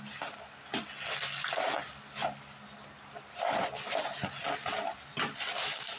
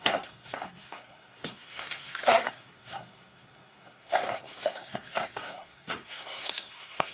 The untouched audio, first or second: first